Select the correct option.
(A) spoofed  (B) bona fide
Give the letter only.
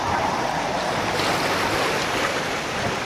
A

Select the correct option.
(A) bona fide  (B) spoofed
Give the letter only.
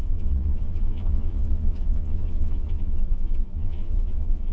B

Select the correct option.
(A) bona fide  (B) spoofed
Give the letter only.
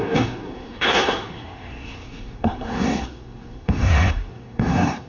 B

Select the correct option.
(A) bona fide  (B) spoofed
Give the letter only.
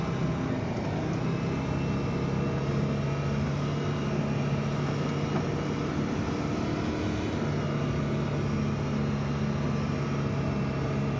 A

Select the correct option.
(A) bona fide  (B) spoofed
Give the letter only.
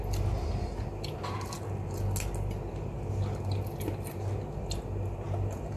A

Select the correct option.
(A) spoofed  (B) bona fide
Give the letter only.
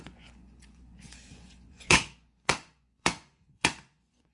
A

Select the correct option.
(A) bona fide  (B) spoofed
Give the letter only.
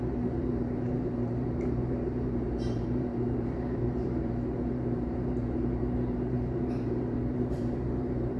B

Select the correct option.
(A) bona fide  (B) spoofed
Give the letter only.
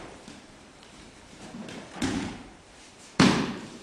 B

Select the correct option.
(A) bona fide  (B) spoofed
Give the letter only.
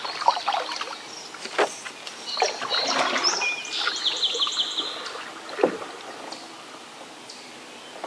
A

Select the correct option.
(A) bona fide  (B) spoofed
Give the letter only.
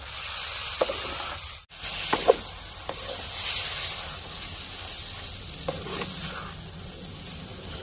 A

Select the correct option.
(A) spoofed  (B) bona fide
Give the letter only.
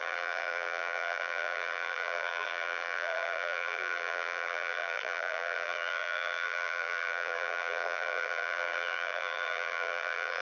A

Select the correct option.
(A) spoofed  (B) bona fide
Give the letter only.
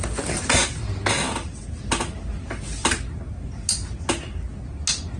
B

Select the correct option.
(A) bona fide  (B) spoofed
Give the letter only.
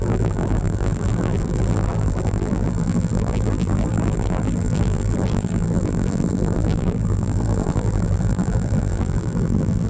B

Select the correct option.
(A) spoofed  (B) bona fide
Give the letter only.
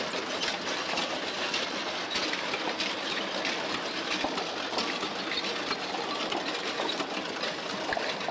B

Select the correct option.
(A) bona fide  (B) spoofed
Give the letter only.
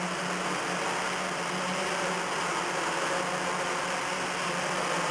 A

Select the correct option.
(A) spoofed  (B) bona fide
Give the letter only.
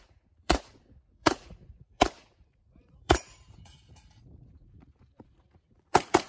A